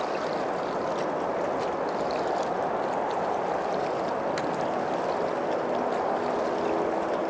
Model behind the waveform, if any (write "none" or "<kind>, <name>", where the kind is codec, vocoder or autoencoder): none